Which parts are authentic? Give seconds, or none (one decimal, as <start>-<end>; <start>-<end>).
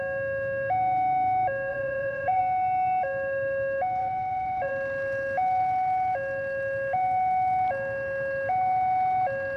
0.0-1.7; 2.4-4.0; 4.7-9.6